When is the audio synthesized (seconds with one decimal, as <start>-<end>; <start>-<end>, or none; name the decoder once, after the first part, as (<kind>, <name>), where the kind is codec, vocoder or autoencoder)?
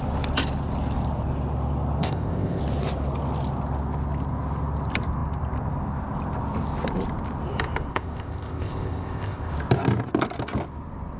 2.0-2.6 (codec, ZipCodec); 7.9-9.5